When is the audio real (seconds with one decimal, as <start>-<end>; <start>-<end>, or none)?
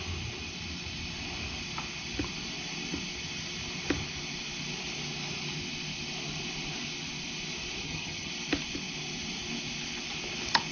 0.0-7.8; 8.3-10.7